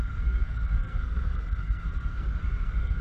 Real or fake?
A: fake